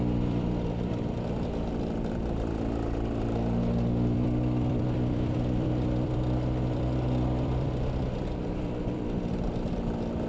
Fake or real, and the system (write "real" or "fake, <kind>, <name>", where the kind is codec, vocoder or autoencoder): fake, vocoder, BigVGAN v2